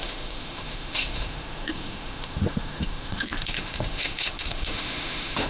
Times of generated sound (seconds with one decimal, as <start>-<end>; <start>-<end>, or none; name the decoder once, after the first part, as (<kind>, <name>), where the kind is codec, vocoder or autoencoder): 0.0-5.5 (autoencoder, DAC-VAE)